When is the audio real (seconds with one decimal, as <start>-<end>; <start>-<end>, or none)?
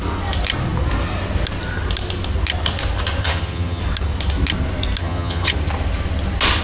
0.0-3.2; 3.8-5.0; 5.5-6.6